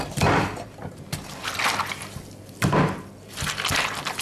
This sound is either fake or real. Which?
real